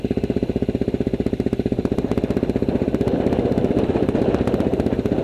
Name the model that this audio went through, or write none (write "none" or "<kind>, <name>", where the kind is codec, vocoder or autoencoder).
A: none